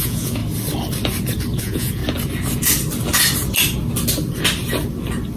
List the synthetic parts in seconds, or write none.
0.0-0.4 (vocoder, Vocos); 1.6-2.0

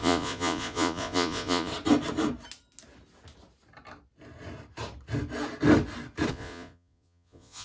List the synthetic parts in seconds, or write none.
0.0-1.7 (vocoder, Vocos); 6.3-7.6

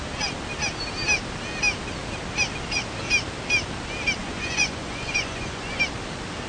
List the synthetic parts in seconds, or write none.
4.2-5.8 (vocoder, Vocos)

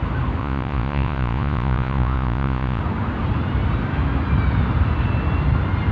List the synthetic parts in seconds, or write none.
0.4-2.8 (vocoder, Vocos)